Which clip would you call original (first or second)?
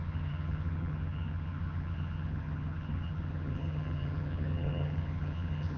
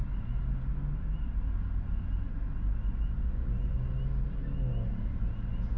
second